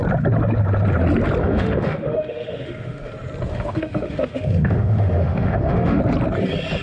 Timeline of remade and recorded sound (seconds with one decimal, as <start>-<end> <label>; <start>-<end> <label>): 0.0-1.4 recorded; 1.4-3.1 remade; 3.1-3.5 recorded; 3.5-6.0 remade; 6.0-6.8 recorded